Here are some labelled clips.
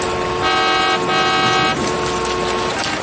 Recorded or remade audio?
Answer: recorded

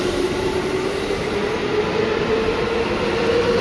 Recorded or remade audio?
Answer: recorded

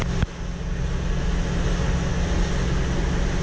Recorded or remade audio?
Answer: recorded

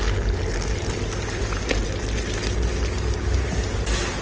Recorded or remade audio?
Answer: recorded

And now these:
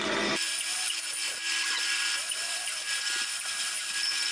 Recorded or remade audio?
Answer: recorded